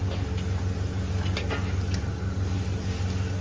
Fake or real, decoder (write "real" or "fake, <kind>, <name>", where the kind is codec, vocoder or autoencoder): real